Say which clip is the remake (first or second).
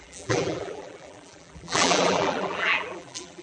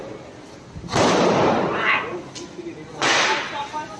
first